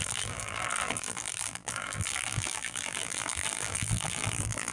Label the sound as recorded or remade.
remade